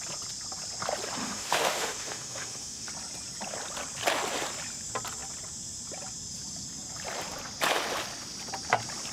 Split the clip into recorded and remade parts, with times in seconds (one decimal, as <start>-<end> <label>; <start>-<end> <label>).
0.0-1.2 recorded; 1.2-2.9 remade; 2.9-9.1 recorded